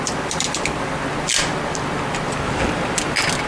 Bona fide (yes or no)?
yes